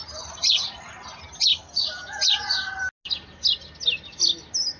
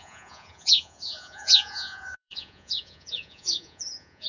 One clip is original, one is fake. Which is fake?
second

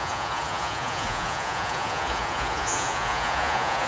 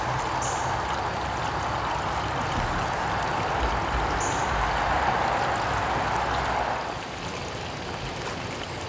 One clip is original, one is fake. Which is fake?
first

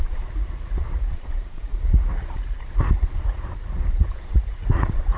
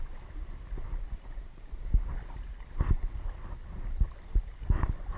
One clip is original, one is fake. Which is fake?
first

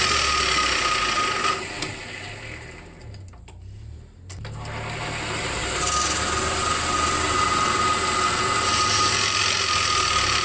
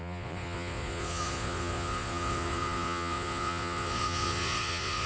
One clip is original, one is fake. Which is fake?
second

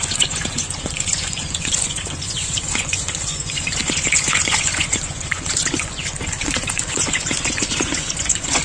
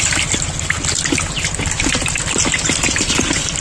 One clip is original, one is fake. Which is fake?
first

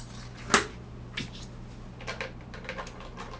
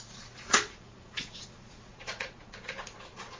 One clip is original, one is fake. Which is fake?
second